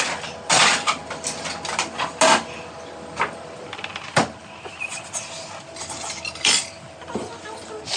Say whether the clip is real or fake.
real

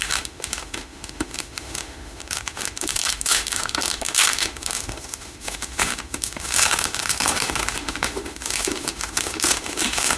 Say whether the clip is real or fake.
fake